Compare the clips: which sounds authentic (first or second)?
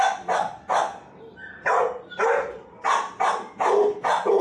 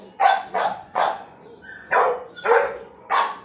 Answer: first